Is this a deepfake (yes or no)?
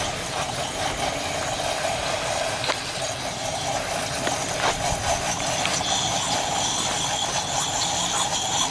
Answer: no